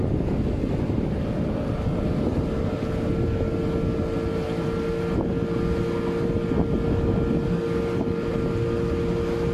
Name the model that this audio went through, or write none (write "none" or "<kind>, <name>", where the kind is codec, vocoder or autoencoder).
none